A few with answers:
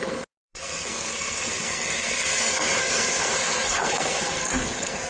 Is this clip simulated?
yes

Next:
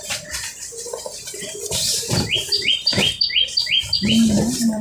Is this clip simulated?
no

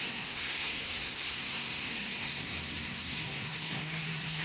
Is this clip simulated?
yes